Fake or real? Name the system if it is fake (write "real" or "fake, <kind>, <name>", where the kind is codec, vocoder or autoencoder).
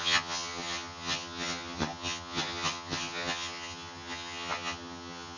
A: fake, vocoder, HiFi-GAN